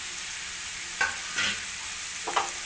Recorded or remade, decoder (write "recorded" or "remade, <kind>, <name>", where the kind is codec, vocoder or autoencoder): recorded